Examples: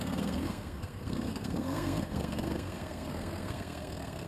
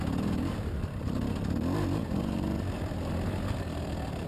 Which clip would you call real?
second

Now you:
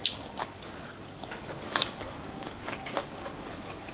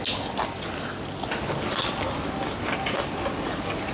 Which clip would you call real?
second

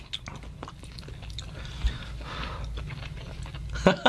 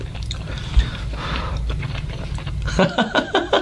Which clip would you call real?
first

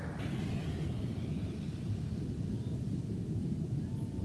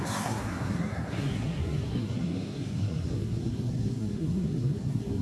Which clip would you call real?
first